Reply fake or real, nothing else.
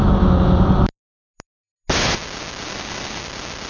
real